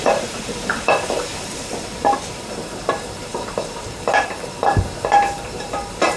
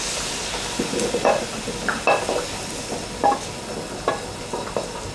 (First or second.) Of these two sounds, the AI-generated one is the first